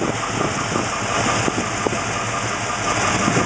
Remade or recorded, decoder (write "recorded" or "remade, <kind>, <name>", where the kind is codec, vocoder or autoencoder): recorded